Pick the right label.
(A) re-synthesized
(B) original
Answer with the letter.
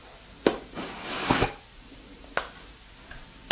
B